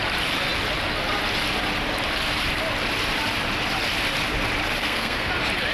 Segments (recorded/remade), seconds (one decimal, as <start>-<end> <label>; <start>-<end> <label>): 0.0-4.8 recorded; 4.8-5.3 remade; 5.3-5.7 recorded